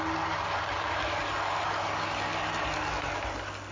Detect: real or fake real